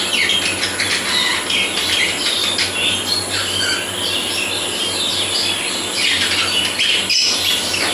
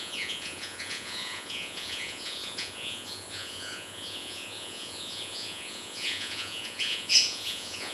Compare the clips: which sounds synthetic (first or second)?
second